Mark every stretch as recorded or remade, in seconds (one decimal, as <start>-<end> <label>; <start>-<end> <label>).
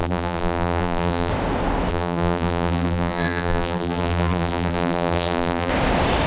0.0-1.3 remade; 1.3-1.9 recorded; 1.9-5.7 remade; 5.7-6.3 recorded